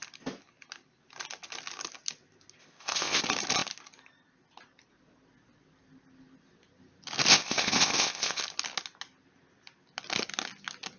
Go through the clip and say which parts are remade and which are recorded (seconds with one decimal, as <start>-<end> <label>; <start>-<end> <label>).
0.0-2.6 recorded; 2.6-3.2 remade; 3.2-7.3 recorded; 7.3-8.4 remade; 8.4-11.0 recorded